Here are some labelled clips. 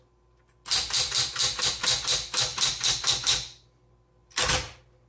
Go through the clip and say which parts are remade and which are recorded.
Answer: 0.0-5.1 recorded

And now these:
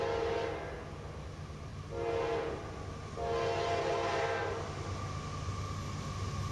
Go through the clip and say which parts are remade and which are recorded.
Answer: 0.0-4.4 recorded; 4.4-5.2 remade; 5.2-6.5 recorded

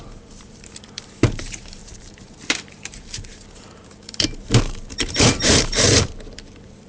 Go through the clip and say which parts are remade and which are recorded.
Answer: 0.0-6.9 remade

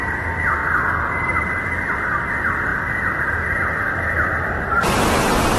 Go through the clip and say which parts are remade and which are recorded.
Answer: 0.0-0.6 recorded; 0.6-1.4 remade; 1.4-2.7 recorded; 2.7-4.8 remade; 4.8-5.6 recorded

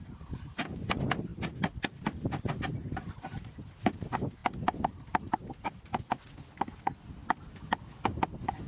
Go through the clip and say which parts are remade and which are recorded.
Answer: 0.0-4.4 recorded; 4.4-6.8 remade; 6.8-7.2 recorded; 7.2-8.0 remade; 8.0-8.7 recorded